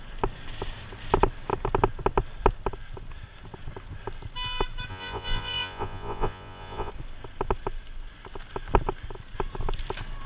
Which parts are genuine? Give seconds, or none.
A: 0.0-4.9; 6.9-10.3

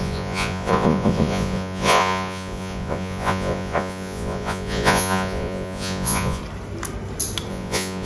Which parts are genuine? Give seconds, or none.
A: 6.4-7.5

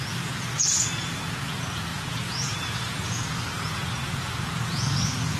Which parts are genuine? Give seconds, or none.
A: none